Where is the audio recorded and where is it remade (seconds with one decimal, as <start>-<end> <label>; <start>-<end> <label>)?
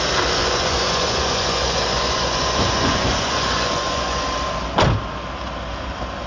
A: 0.0-0.4 recorded; 0.4-4.2 remade; 4.2-6.3 recorded